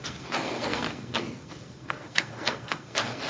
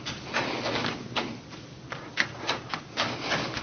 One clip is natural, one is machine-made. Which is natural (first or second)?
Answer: second